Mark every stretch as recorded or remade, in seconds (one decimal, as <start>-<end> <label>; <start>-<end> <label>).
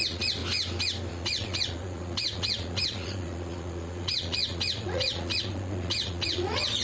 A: 0.0-0.4 remade; 0.4-1.1 recorded; 1.1-6.8 remade